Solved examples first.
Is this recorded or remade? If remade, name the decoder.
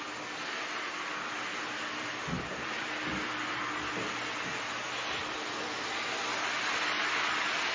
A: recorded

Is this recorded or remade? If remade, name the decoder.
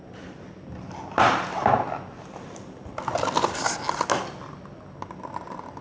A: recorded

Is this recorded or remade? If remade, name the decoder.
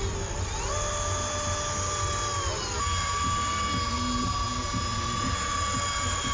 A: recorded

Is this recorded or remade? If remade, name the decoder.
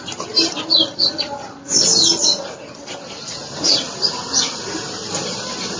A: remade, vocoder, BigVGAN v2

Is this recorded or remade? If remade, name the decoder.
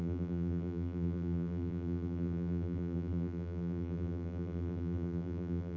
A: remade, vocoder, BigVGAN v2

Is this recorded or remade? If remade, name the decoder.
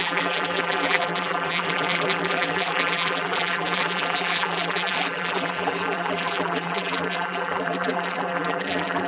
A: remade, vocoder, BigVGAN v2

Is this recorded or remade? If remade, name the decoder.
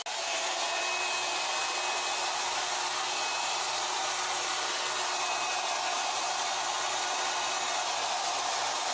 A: recorded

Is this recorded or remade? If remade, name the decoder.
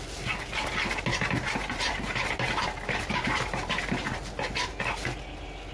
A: recorded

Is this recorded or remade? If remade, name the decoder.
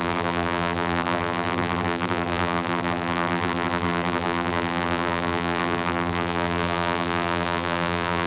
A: remade, vocoder, BigVGAN v2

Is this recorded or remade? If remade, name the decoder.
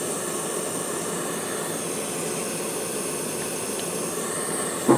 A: recorded